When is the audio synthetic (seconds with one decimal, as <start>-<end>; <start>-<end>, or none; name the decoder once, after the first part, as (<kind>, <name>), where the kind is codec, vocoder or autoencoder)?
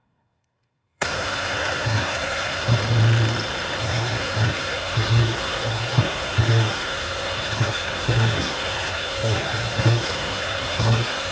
0.0-2.8 (codec, SNAC); 3.8-11.3